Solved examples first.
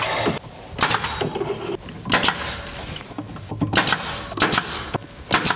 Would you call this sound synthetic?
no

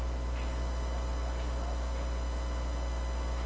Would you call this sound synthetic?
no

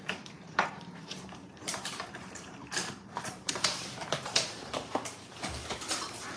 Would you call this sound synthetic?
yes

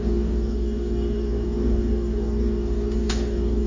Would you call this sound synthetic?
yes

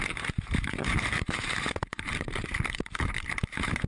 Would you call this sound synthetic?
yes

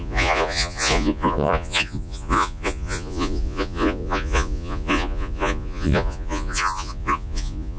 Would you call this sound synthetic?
yes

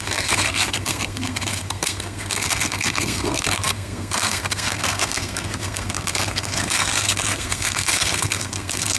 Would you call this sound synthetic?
yes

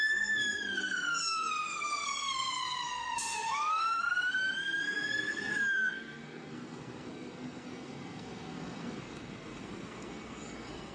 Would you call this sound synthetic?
yes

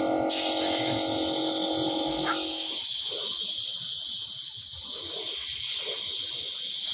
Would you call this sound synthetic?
no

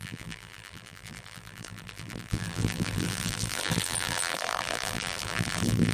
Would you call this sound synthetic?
yes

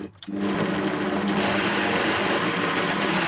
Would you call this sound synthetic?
no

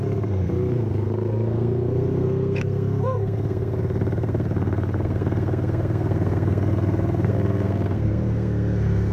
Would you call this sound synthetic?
yes